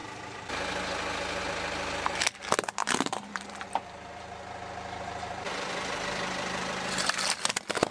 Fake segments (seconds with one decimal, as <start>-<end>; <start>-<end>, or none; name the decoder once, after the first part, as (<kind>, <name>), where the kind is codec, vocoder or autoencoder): 2.8-7.5 (vocoder, BigVGAN v2)